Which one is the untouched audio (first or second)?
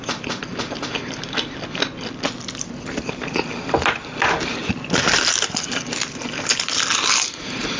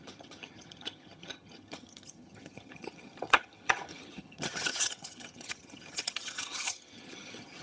first